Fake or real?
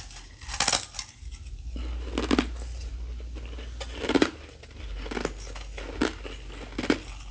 real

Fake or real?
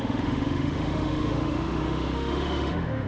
fake